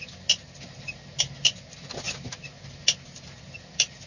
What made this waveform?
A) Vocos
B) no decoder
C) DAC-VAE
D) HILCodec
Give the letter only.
B